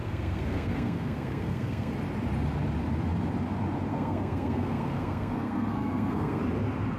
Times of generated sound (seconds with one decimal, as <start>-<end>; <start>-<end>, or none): 0.0-1.9; 3.9-6.4